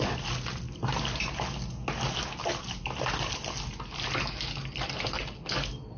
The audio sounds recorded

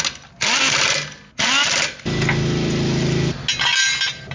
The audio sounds recorded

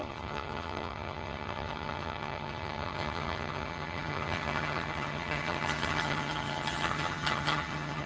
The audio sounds remade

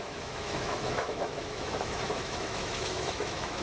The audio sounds remade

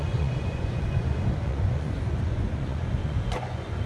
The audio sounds remade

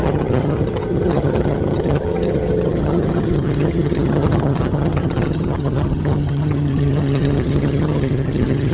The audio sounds remade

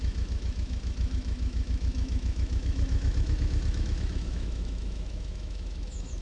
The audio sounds remade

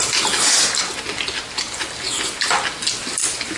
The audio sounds recorded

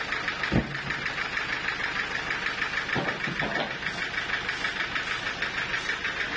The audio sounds recorded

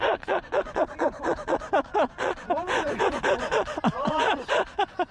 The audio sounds remade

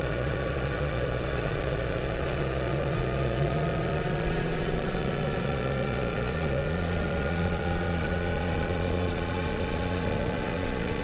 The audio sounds remade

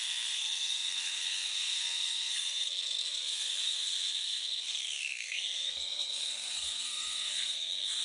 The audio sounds remade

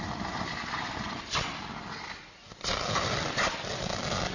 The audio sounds recorded